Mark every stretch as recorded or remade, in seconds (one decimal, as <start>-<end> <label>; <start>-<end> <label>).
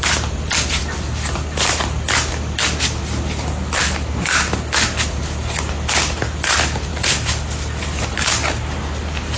0.0-9.4 recorded